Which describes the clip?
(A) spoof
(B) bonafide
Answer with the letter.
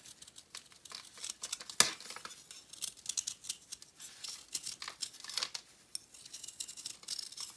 B